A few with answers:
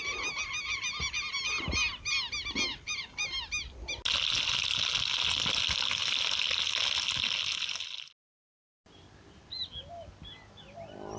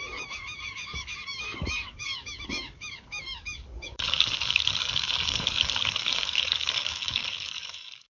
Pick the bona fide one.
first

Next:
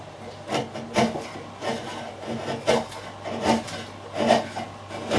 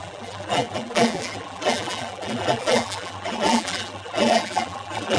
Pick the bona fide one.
first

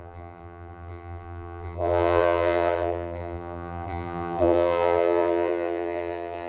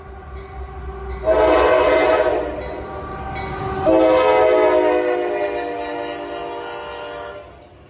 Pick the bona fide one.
second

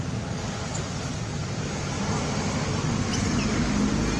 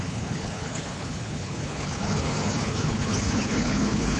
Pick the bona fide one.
first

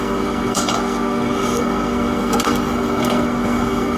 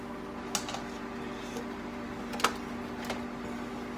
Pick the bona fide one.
second